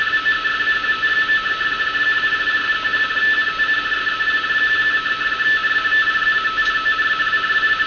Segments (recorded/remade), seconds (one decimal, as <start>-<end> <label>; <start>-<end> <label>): 0.0-7.9 recorded